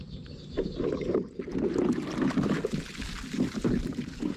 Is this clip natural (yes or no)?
yes